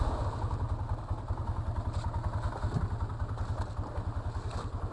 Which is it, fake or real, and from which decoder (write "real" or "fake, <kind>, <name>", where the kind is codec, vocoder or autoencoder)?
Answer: real